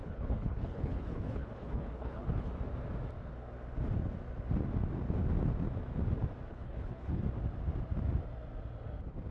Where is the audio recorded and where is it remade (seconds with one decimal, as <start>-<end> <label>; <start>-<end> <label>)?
0.0-2.5 remade; 2.5-6.5 recorded; 6.5-7.2 remade; 7.2-9.3 recorded